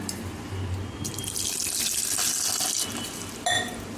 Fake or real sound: real